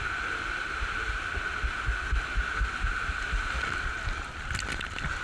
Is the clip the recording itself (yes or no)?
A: yes